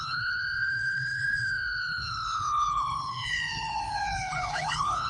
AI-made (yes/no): yes